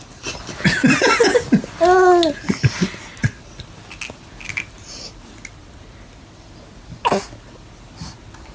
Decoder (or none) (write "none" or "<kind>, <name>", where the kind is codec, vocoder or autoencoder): none